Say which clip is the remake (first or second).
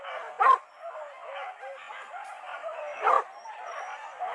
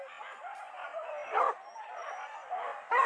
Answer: first